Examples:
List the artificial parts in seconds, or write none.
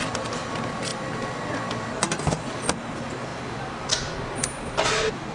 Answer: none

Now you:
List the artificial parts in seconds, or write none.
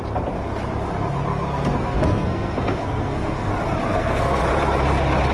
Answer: 1.3-3.5 (codec, SNAC); 3.9-4.4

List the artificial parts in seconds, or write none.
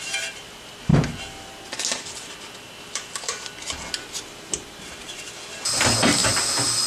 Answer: none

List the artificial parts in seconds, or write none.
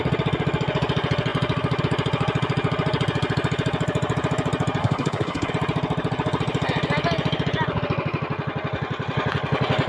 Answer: 4.8-5.5 (codec, SNAC)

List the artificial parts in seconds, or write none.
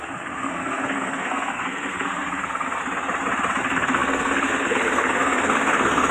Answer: 0.0-2.8 (codec, SNAC); 3.6-6.1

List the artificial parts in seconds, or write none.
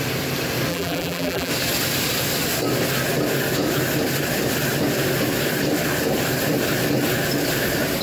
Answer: 0.7-1.5 (vocoder, BigVGAN v2)